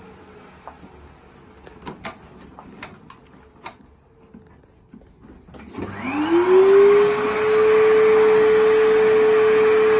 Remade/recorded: recorded